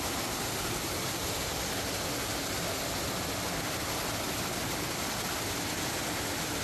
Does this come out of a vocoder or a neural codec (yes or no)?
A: no